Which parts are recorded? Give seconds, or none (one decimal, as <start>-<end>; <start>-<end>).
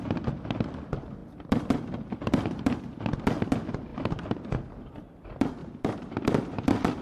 0.0-5.6; 6.1-7.0